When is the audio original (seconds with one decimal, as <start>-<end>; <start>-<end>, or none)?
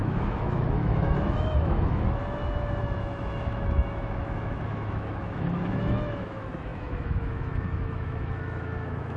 2.2-2.8